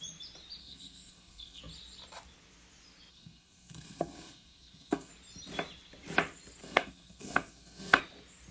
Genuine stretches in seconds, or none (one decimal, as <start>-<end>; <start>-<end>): 0.0-0.6; 1.6-3.1; 5.1-6.6; 8.0-8.5